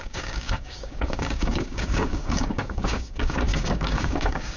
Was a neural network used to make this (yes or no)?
yes